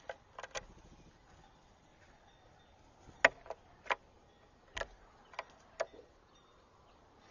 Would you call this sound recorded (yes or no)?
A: yes